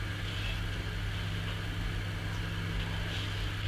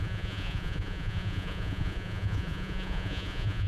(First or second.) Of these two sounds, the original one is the first